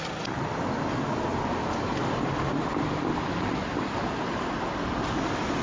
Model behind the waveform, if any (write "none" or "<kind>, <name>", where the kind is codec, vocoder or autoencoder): none